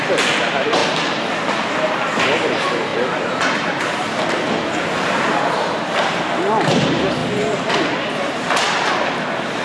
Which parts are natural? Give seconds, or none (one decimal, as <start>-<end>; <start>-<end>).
0.0-2.9; 6.2-7.2; 8.9-9.6